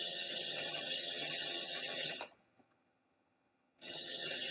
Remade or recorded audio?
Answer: remade